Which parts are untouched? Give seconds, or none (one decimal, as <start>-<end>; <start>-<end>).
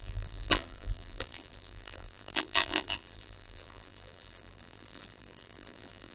none